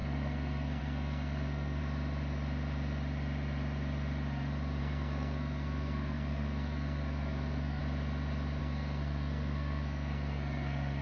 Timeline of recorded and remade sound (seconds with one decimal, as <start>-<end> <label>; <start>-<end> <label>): 0.0-1.8 remade; 1.8-4.8 recorded; 4.8-7.8 remade; 7.8-8.6 recorded; 8.6-11.0 remade